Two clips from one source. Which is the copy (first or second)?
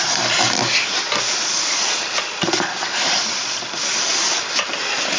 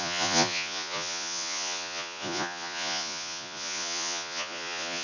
second